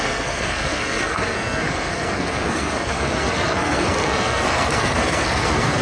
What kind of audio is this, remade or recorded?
remade